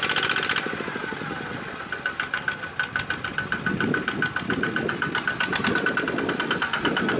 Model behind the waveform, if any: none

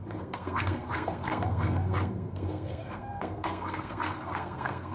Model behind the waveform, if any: codec, SNAC